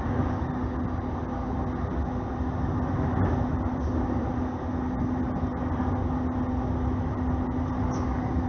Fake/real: real